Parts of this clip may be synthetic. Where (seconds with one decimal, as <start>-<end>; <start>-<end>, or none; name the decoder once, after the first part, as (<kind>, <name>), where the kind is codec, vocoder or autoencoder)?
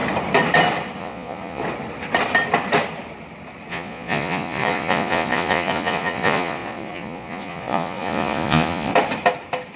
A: 1.0-1.6 (vocoder, Vocos); 3.7-8.9